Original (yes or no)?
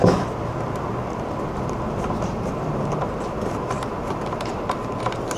no